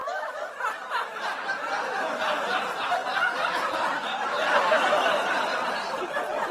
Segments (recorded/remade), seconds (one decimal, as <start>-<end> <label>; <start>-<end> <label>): 0.0-1.0 recorded; 1.0-1.9 remade; 1.9-3.0 recorded; 3.0-6.5 remade